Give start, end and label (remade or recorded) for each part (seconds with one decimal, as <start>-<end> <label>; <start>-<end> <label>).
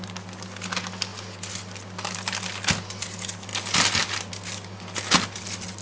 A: 0.0-5.8 recorded